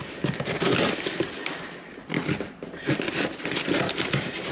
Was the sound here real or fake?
real